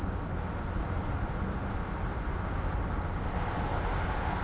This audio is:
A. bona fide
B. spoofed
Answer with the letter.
A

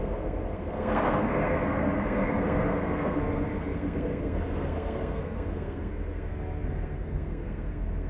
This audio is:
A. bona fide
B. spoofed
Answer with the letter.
B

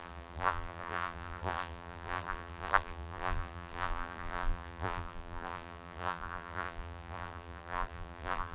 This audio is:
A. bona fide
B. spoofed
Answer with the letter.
B